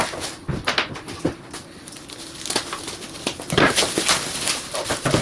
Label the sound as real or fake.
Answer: real